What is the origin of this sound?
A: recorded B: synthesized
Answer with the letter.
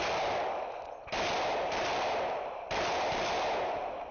A